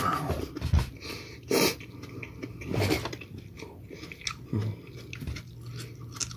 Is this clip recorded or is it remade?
recorded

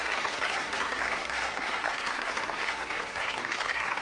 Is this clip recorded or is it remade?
remade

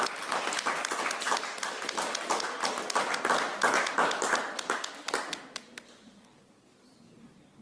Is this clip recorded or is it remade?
recorded